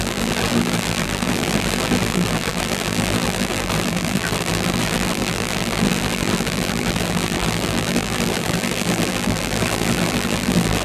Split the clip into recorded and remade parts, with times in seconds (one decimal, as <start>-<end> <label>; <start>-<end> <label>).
0.0-10.8 remade